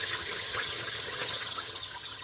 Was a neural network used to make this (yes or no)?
yes